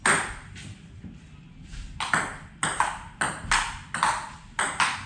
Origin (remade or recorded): recorded